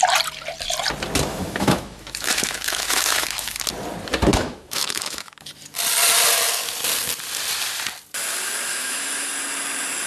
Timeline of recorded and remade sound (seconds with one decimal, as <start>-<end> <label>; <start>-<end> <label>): 0.0-1.3 recorded; 1.3-3.6 remade; 3.6-4.3 recorded; 4.3-5.4 remade; 5.4-8.7 recorded; 8.7-9.3 remade; 9.3-10.1 recorded